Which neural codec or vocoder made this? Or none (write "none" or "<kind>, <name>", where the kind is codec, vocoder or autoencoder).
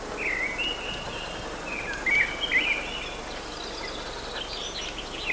none